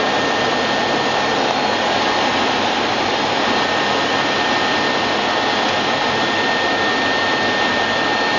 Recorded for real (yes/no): yes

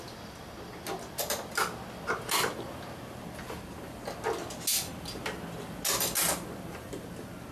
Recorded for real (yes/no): yes